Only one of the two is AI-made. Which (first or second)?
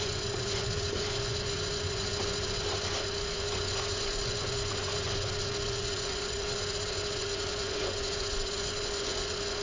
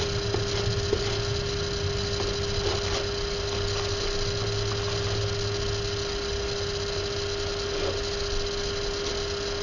first